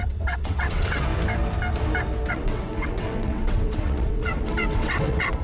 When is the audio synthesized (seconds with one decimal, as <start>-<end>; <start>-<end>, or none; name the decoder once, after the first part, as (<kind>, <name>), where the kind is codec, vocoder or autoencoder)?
0.0-1.1 (vocoder, WaveNeXt); 2.3-5.4